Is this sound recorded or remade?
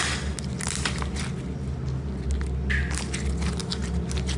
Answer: recorded